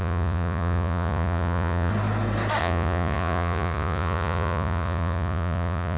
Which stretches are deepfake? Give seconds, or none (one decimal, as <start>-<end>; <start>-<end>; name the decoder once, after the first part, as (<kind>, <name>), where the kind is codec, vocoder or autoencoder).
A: 0.0-1.9 (vocoder, Vocos); 2.6-6.0